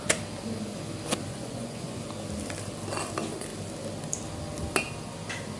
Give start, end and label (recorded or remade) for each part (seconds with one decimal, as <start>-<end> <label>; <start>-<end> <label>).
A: 0.0-1.3 recorded; 1.3-2.0 remade; 2.0-5.6 recorded